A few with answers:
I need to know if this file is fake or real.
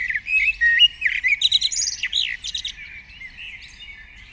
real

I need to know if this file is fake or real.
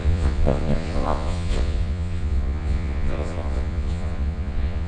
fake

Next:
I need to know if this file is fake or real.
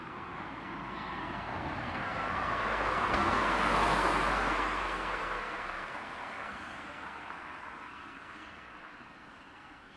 fake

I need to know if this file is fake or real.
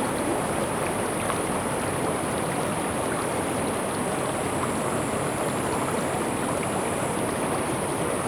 real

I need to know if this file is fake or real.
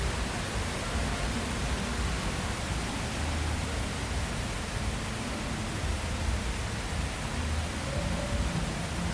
real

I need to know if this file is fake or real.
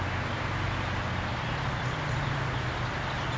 real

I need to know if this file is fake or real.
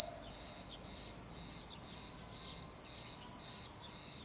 real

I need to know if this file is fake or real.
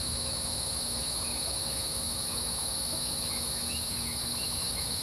fake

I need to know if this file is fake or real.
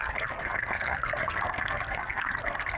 fake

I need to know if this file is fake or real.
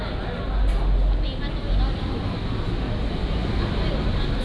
real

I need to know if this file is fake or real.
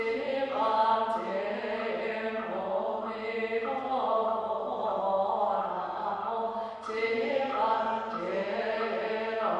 real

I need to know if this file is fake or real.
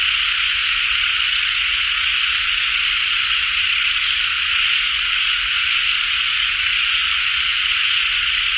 fake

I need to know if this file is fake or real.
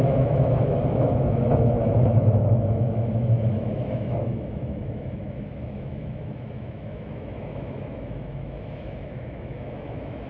fake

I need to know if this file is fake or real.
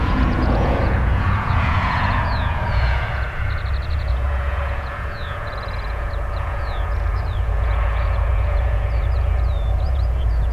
fake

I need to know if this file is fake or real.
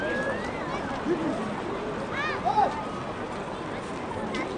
real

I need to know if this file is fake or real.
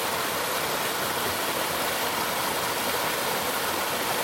real